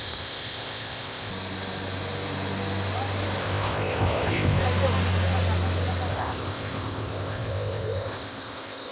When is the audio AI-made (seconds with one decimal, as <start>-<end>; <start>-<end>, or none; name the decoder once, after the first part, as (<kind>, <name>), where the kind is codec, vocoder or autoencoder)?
0.0-1.3 (codec, ZipCodec); 3.4-4.6; 6.1-8.9